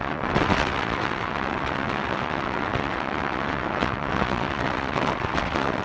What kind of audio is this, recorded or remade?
remade